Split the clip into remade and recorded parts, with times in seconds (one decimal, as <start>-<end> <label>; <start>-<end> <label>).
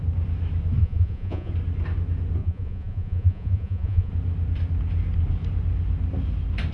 0.0-0.8 recorded; 0.8-1.5 remade; 1.5-2.4 recorded; 2.4-4.1 remade; 4.1-6.7 recorded